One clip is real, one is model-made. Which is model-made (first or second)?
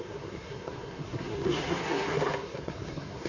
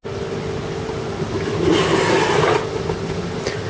first